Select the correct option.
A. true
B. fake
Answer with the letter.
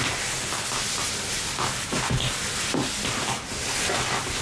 A